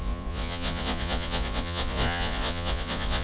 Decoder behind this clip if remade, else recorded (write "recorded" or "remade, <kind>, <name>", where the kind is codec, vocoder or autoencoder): remade, vocoder, Vocos